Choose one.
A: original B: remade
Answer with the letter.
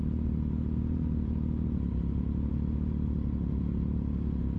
A